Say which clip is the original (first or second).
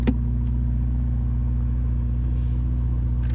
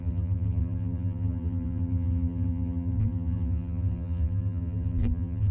first